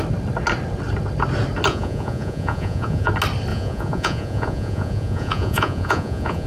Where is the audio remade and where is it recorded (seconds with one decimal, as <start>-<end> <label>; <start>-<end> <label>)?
0.0-1.7 recorded; 1.7-3.1 remade; 3.1-3.5 recorded; 3.5-6.5 remade